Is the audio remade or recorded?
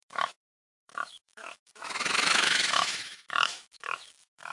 remade